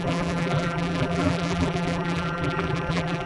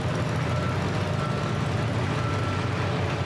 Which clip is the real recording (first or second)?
second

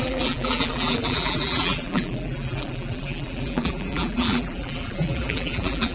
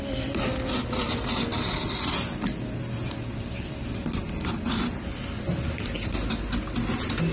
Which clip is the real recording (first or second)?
second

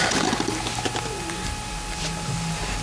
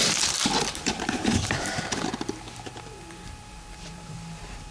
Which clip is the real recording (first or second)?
first